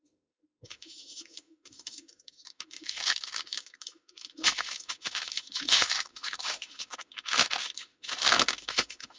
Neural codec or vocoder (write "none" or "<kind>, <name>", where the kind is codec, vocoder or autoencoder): autoencoder, DAC-VAE